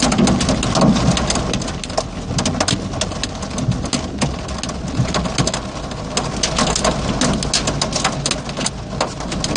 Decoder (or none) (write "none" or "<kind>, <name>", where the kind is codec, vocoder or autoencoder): none